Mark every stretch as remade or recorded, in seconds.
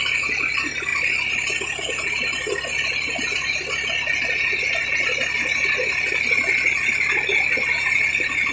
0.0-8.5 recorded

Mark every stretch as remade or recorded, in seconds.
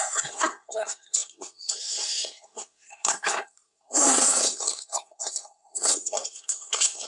0.0-7.1 remade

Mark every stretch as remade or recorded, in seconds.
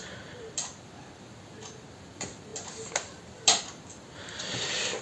0.0-5.0 recorded